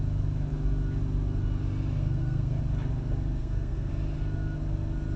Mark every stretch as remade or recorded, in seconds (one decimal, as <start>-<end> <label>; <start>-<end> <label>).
0.0-2.0 recorded; 2.0-2.6 remade; 2.6-3.4 recorded; 3.4-3.9 remade; 3.9-5.2 recorded